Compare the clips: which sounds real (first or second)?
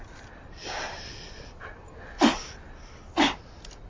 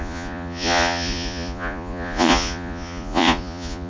first